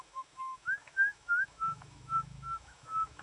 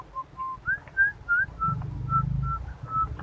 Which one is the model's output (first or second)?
first